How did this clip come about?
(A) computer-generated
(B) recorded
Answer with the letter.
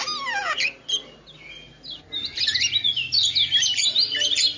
B